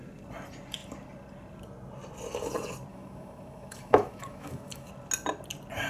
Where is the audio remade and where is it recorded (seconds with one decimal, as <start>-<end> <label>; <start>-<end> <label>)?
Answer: 0.0-2.9 recorded; 2.9-4.9 remade; 4.9-5.9 recorded